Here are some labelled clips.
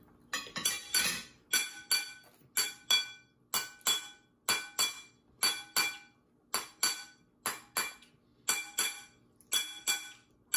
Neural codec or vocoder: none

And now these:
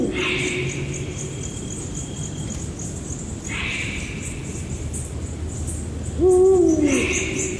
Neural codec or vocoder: none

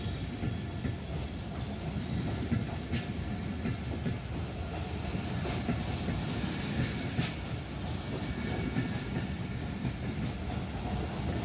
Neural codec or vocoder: none